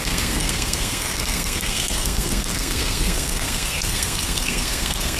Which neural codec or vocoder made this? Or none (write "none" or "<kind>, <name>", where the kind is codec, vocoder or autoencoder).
codec, SNAC